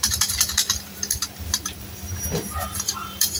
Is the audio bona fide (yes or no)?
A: no